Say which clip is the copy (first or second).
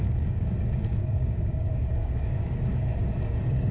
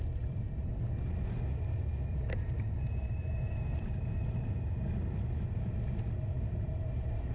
first